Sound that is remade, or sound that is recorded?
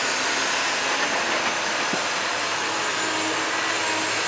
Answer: recorded